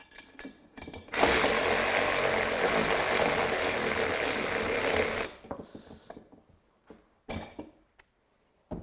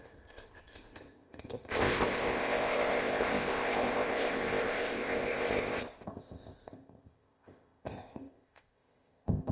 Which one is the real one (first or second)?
first